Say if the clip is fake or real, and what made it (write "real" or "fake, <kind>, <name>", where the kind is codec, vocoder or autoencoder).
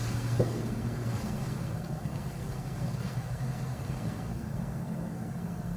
fake, codec, SNAC